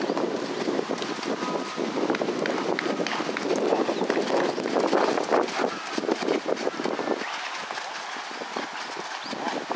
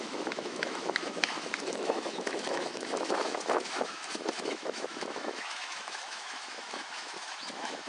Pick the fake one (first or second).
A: second